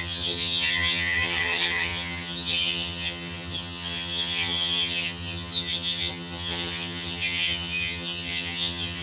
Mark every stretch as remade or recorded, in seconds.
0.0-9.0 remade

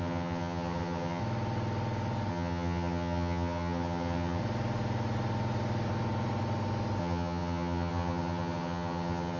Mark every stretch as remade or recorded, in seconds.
0.0-1.2 remade; 1.2-2.3 recorded; 2.3-4.4 remade; 4.4-7.0 recorded; 7.0-9.4 remade